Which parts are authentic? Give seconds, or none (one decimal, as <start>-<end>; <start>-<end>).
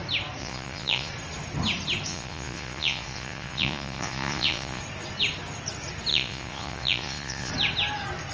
0.0-0.4; 1.1-2.1; 4.8-6.1; 7.5-8.3